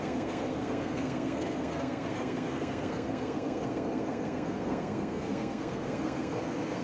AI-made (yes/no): yes